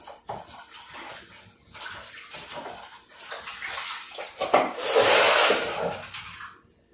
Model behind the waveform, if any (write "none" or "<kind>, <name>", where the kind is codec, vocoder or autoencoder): none